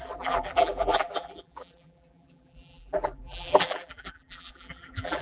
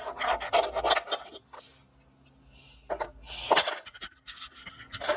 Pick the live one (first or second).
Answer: second